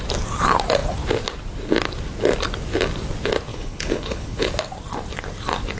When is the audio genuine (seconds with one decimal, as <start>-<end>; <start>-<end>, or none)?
0.0-3.5; 4.5-5.8